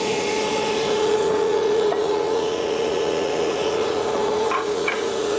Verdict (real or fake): fake